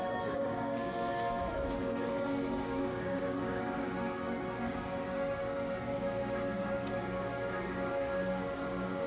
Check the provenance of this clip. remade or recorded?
remade